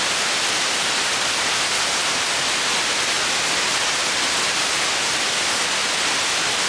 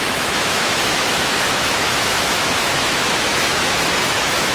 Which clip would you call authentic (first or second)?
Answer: first